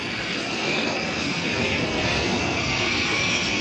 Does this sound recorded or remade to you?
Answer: remade